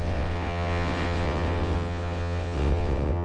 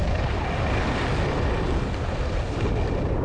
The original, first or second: second